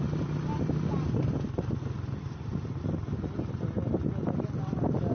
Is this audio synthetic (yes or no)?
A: no